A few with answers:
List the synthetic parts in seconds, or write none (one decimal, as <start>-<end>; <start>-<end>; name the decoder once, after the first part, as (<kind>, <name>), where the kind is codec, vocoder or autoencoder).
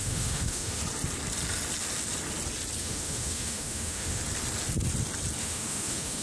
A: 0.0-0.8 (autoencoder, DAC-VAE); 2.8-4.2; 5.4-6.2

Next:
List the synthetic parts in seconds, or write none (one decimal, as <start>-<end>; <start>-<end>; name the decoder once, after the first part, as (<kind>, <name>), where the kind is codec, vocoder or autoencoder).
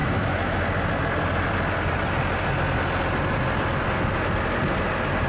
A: 0.0-0.6 (autoencoder, DAC-VAE)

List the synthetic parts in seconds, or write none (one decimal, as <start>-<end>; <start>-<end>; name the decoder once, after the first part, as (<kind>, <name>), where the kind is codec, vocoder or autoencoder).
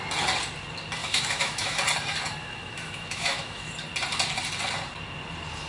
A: 1.0-1.8 (autoencoder, DAC-VAE); 2.4-3.7